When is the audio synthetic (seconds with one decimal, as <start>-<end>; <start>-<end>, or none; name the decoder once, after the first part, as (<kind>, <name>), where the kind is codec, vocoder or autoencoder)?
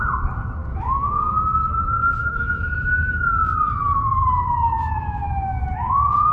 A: 0.6-1.7 (autoencoder, DAC-VAE); 2.2-3.2; 3.8-6.3